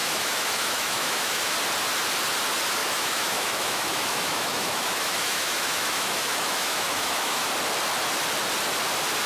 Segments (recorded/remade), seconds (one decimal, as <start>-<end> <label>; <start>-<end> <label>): 0.0-1.5 remade; 1.5-2.8 recorded; 2.8-7.5 remade; 7.5-9.3 recorded